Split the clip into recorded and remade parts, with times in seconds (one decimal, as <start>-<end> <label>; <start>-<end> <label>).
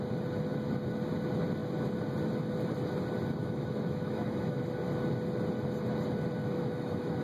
0.0-3.4 recorded; 3.4-4.6 remade; 4.6-6.4 recorded; 6.4-7.2 remade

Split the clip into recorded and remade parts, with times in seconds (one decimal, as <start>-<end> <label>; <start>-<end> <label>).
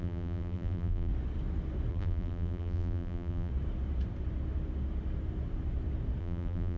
0.0-1.1 remade; 1.1-1.9 recorded; 1.9-3.5 remade; 3.5-6.2 recorded; 6.2-6.8 remade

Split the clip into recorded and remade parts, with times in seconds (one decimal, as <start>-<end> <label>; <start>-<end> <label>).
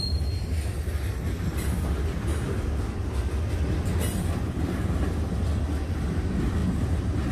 0.0-7.3 recorded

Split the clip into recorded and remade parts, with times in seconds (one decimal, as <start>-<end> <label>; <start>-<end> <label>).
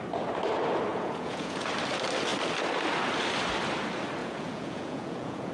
0.0-0.9 recorded; 0.9-1.7 remade; 1.7-4.2 recorded; 4.2-5.5 remade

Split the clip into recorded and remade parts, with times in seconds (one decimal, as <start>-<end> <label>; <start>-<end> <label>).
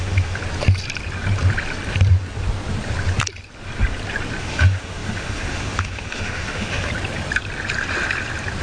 0.0-0.4 remade; 0.4-4.4 recorded; 4.4-6.9 remade; 6.9-8.6 recorded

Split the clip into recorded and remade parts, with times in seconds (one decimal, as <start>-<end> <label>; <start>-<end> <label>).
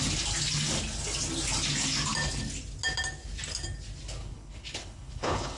0.0-4.2 recorded; 4.2-5.6 remade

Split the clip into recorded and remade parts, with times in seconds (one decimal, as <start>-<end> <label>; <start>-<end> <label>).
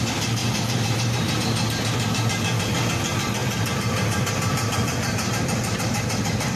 0.0-0.4 recorded; 0.4-1.3 remade; 1.3-3.4 recorded; 3.4-6.6 remade